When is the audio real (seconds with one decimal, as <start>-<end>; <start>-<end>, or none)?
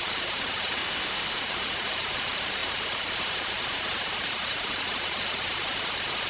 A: 0.8-1.4